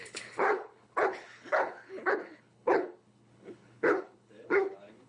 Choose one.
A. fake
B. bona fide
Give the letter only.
A